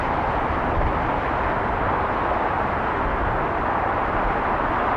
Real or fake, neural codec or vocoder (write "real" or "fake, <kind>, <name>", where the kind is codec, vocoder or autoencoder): real